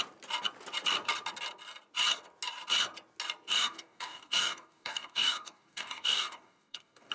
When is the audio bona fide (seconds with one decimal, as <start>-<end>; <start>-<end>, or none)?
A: 0.0-3.6